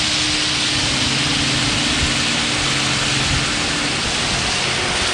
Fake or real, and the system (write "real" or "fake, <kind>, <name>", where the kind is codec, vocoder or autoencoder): real